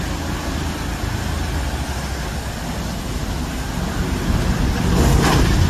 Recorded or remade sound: recorded